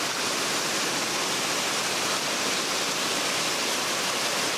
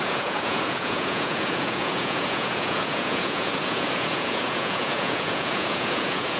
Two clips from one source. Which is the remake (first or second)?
second